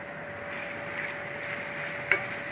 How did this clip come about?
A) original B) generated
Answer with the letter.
A